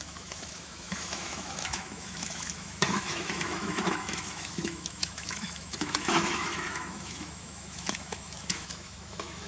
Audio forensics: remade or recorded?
remade